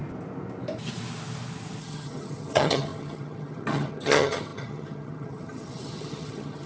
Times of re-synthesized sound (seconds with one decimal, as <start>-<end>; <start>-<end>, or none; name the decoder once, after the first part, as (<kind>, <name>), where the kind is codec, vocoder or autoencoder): 1.8-6.7 (vocoder, HiFi-GAN)